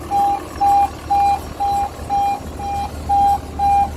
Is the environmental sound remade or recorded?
recorded